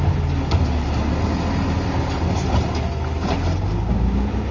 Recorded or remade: recorded